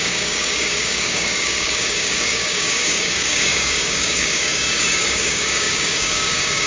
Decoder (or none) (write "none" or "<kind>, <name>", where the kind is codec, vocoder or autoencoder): codec, DAC